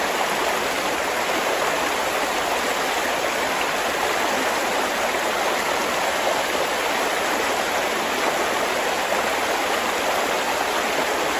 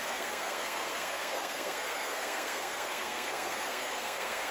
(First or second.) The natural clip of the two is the first